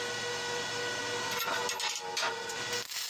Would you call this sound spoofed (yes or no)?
no